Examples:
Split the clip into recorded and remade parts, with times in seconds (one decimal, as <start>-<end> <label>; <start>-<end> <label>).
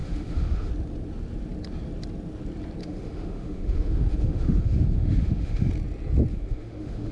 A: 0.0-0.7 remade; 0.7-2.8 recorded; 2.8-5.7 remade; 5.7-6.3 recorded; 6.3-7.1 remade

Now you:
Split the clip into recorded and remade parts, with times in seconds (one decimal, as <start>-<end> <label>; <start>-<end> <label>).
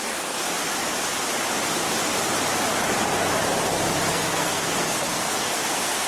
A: 0.0-0.4 remade; 0.4-4.1 recorded; 4.1-6.1 remade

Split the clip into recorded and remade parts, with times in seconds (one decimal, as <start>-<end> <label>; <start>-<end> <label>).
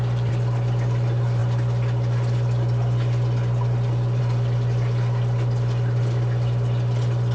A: 0.0-7.3 recorded